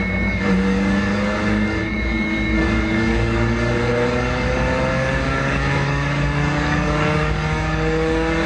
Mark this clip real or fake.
fake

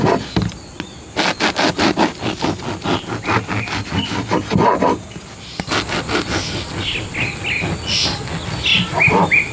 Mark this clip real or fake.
real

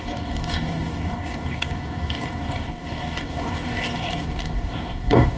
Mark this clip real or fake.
fake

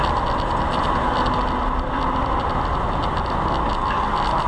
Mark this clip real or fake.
real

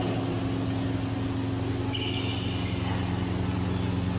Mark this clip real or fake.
real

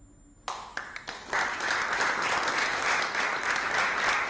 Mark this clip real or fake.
real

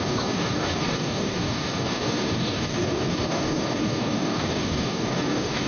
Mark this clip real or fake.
fake